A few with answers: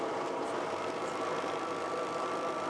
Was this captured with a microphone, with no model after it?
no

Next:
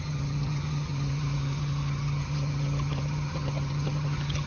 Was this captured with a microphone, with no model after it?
no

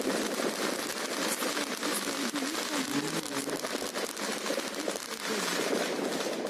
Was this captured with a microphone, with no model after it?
yes